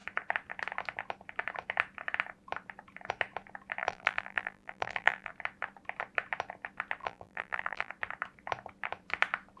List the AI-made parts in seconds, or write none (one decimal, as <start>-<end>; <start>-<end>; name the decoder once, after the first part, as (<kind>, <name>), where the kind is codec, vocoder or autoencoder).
3.8-5.3 (vocoder, BigVGAN v2); 7.0-7.9